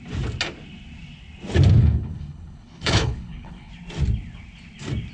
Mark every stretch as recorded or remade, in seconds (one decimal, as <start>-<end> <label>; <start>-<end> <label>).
0.0-1.8 recorded; 1.8-3.7 remade; 3.7-5.1 recorded